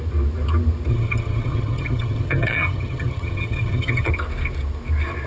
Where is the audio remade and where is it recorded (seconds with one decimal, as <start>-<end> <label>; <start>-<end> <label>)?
0.0-0.9 recorded; 0.9-4.1 remade; 4.1-5.3 recorded